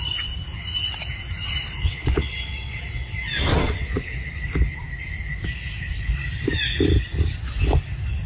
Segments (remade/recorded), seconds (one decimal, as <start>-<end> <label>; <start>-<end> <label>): 0.0-1.9 recorded; 1.9-3.1 remade; 3.1-3.5 recorded; 3.5-4.3 remade; 4.3-8.3 recorded